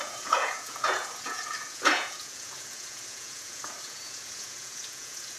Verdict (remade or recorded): remade